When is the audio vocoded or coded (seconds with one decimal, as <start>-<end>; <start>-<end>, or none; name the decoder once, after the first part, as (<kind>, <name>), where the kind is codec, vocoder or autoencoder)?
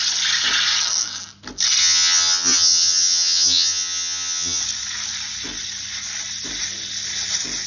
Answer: 1.8-4.6 (vocoder, HiFi-GAN)